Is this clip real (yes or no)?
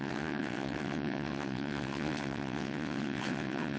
no